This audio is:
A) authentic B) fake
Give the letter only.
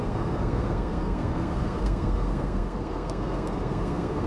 B